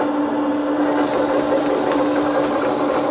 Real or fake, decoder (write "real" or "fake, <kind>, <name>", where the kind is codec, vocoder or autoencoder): real